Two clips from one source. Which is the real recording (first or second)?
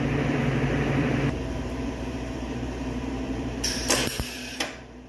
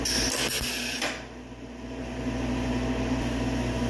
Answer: second